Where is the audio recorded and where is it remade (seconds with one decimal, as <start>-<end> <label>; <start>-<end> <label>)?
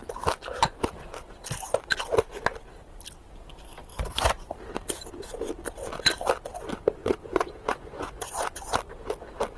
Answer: 0.0-3.9 recorded; 3.9-4.5 remade; 4.5-7.0 recorded; 7.0-8.6 remade; 8.6-9.6 recorded